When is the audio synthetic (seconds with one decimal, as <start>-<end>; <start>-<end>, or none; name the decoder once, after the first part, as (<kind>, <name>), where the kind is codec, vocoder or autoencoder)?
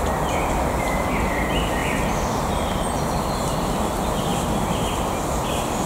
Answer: none